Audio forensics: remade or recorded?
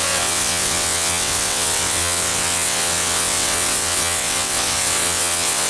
remade